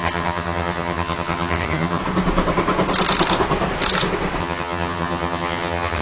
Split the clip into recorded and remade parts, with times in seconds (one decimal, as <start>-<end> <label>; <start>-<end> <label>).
0.0-2.0 remade; 2.0-4.4 recorded; 4.4-6.0 remade